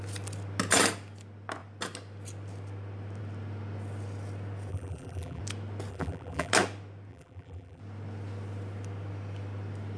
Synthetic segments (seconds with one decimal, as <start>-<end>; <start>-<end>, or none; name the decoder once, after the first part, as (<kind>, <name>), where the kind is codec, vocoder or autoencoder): 4.7-5.4 (vocoder, BigVGAN v2); 5.9-6.5; 7.1-7.8

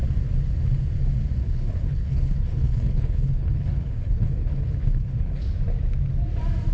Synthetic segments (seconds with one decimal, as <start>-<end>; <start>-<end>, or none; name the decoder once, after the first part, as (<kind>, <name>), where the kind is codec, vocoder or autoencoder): 1.4-5.4 (codec, HILCodec)

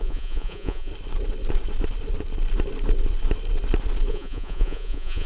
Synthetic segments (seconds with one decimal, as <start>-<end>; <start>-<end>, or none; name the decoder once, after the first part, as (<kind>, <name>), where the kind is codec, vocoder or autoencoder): 0.0-0.9 (vocoder, Vocos); 4.1-5.3

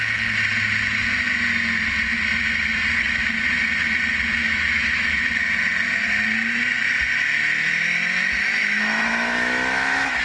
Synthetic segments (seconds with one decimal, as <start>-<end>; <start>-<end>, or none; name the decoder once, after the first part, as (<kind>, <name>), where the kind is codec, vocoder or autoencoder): 4.4-5.2 (autoencoder, DAC-VAE); 8.4-10.2

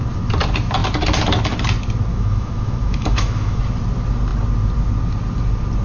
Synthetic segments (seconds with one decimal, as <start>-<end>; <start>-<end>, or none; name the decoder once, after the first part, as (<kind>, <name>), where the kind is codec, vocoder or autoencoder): 2.1-3.6 (autoencoder, DAC-VAE)

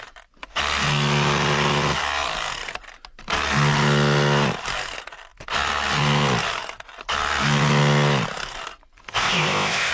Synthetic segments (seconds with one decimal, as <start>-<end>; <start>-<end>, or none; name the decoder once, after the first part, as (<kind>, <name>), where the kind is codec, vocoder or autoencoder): 9.1-9.9 (codec, ZipCodec)

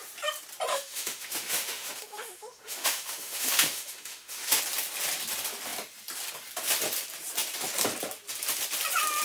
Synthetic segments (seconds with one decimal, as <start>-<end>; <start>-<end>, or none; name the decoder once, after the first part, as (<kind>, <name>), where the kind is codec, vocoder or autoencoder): 0.7-4.6 (autoencoder, DAC-VAE)

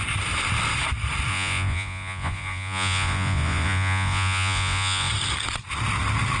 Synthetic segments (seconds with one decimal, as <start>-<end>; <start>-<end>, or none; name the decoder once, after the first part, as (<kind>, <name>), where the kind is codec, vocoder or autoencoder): 1.3-5.1 (vocoder, Vocos)